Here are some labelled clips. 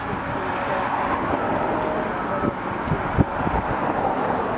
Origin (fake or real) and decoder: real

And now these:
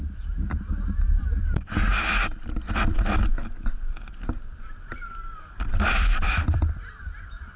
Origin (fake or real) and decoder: fake, vocoder, BigVGAN v2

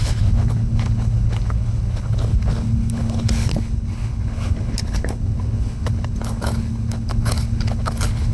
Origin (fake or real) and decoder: fake, codec, HILCodec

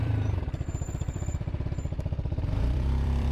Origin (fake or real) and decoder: fake, vocoder, BigVGAN v2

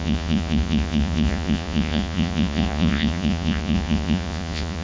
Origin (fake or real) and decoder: fake, vocoder, Vocos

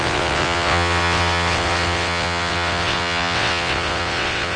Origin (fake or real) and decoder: fake, vocoder, WaveNeXt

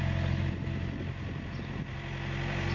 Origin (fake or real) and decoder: real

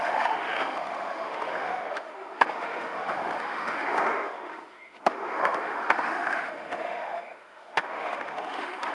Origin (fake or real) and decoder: fake, autoencoder, DAC-VAE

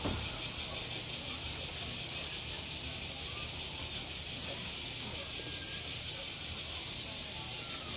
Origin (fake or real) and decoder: real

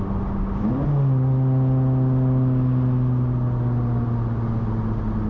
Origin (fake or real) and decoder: real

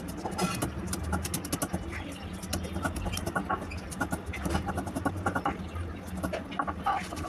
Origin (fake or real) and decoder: real